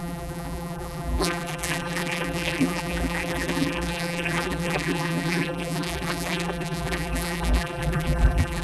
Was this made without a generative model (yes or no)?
no